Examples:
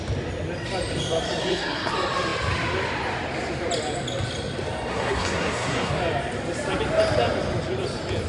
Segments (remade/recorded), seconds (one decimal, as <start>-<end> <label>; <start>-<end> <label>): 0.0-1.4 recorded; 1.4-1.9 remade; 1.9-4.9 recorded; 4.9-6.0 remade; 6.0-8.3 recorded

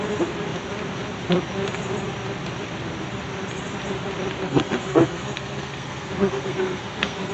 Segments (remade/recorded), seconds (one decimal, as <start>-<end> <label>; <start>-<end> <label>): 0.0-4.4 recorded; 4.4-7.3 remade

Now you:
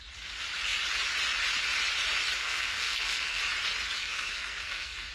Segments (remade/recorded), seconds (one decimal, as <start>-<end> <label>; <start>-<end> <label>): 0.0-2.4 recorded; 2.4-3.4 remade; 3.4-4.0 recorded; 4.0-5.1 remade